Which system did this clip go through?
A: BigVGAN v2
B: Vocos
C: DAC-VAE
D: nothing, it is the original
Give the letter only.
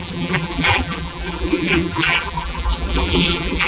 A